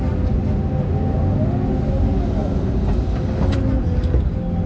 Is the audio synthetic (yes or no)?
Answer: no